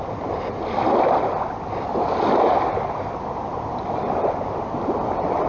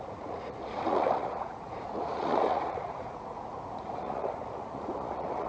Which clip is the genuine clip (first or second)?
first